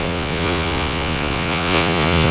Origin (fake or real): fake